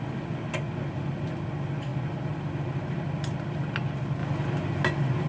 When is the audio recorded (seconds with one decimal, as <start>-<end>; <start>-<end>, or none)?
0.0-5.3